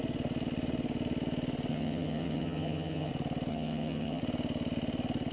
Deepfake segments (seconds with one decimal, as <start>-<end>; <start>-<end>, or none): 1.7-3.1; 3.5-4.2